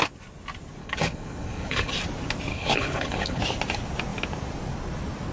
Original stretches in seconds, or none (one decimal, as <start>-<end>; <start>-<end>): 0.0-0.8; 1.9-2.5; 3.4-5.3